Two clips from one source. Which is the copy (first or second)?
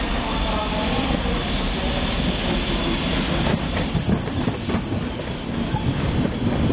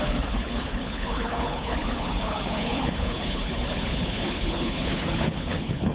second